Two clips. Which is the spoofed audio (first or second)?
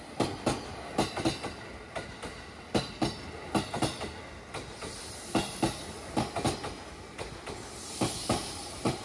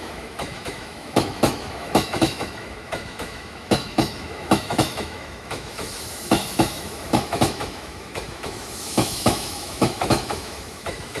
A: second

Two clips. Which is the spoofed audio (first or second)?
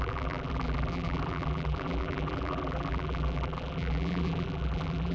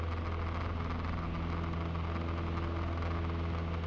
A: first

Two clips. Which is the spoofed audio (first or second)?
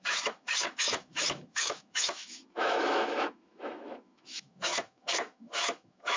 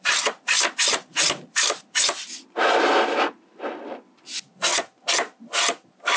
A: first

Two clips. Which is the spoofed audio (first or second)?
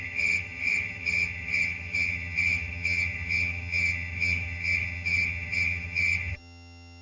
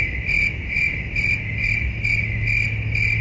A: first